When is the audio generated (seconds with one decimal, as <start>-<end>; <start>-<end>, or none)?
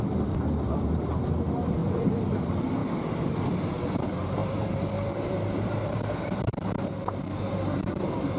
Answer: 0.0-1.8; 2.4-2.8; 3.9-8.4